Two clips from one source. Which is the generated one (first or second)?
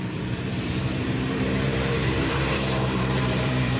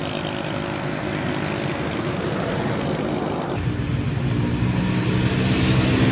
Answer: first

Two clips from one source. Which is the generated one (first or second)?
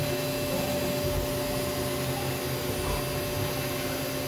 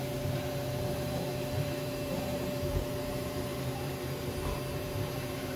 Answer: second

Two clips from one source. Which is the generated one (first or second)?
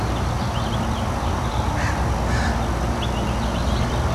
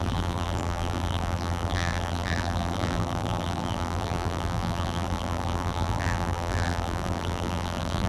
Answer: second